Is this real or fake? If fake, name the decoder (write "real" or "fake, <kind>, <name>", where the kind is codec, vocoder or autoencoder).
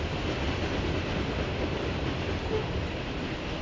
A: real